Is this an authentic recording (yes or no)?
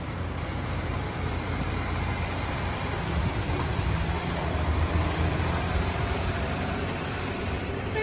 no